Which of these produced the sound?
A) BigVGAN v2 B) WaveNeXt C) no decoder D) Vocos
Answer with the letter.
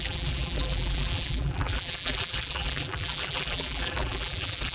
A